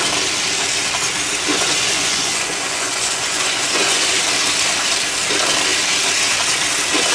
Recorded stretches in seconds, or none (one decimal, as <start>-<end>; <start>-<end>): 0.0-1.5; 4.2-7.1